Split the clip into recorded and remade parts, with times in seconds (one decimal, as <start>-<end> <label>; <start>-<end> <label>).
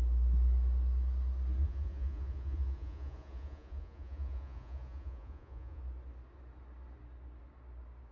0.0-1.6 recorded; 1.6-5.8 remade; 5.8-8.1 recorded